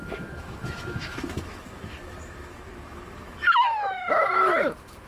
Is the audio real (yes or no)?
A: no